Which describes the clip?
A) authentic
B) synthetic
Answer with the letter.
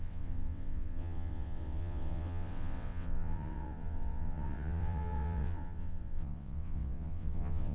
B